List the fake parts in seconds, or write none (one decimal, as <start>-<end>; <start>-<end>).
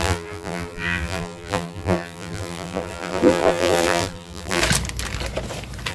0.0-4.6